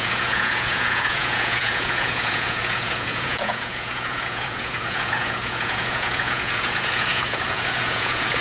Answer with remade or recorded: remade